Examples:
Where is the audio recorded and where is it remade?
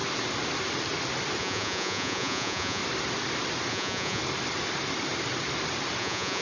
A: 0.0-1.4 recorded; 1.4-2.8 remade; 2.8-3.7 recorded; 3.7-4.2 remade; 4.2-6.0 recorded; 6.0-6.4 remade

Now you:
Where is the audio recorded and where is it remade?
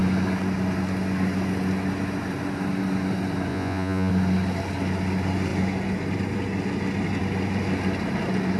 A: 0.0-3.5 recorded; 3.5-4.1 remade; 4.1-8.6 recorded